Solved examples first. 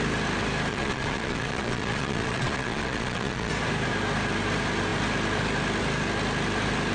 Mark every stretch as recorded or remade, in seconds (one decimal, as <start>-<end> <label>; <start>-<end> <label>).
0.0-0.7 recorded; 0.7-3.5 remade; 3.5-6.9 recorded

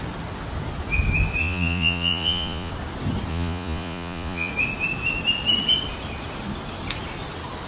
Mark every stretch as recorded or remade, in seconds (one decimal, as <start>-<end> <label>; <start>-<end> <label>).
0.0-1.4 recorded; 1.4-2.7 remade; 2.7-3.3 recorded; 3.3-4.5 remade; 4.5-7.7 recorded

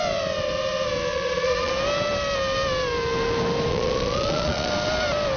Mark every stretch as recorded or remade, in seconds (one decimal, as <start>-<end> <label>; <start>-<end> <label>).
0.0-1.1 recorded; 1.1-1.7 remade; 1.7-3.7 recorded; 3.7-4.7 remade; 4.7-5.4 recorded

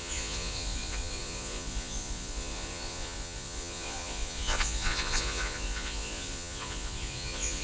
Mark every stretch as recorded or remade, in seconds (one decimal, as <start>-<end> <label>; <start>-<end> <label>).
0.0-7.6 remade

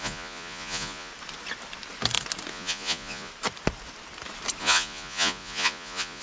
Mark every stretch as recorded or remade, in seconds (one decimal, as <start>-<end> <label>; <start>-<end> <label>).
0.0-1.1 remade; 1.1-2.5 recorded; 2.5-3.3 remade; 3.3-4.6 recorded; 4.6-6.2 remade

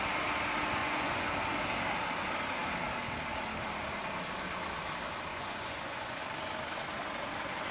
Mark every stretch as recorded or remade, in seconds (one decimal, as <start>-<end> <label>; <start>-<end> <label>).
0.0-0.8 recorded; 0.8-1.3 remade; 1.3-5.3 recorded; 5.3-6.2 remade; 6.2-7.7 recorded

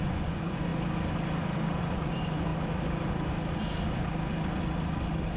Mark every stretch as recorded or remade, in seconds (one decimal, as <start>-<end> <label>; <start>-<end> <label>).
0.0-0.7 remade; 0.7-1.8 recorded; 1.8-2.5 remade; 2.5-5.4 recorded